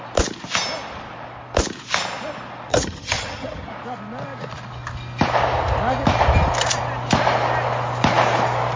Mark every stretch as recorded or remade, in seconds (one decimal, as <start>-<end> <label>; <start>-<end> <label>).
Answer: 0.0-2.7 recorded; 2.7-3.7 remade; 3.7-8.8 recorded